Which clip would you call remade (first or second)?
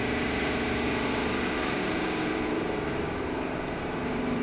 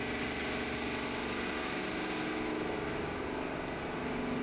first